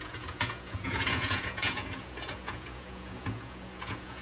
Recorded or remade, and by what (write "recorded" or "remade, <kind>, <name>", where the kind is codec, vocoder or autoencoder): remade, vocoder, Vocos